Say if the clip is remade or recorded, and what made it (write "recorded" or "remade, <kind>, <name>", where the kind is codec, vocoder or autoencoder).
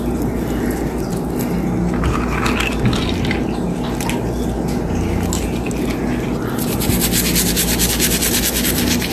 recorded